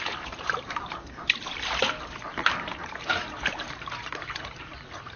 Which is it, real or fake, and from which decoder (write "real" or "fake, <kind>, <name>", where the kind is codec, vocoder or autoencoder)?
fake, vocoder, BigVGAN v2